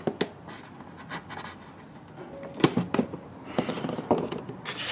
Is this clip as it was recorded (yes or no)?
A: yes